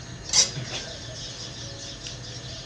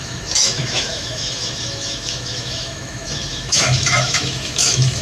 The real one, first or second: first